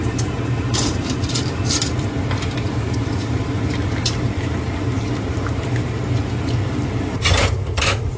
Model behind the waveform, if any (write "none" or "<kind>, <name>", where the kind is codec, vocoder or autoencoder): vocoder, BigVGAN v2